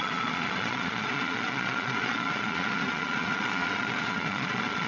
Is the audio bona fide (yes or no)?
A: no